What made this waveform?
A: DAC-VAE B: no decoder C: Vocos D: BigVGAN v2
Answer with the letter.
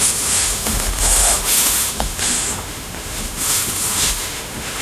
A